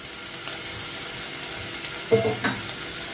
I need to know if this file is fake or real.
real